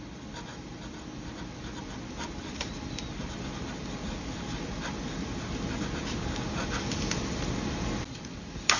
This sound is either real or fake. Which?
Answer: real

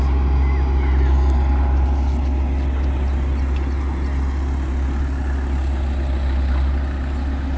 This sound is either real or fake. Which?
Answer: real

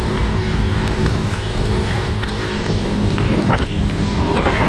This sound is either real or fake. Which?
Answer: fake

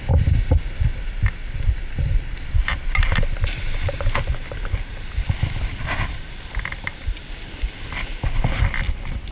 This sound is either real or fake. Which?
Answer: real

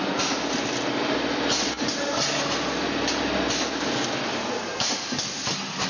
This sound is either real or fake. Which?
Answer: real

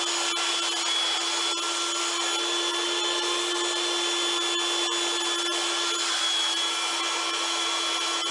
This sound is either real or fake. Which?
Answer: real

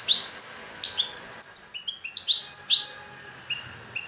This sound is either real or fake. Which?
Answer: real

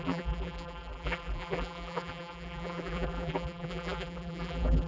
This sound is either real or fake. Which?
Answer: fake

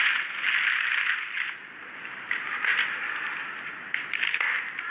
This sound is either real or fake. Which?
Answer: real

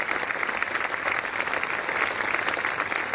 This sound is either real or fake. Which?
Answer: real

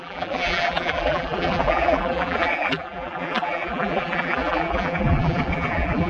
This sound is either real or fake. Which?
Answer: fake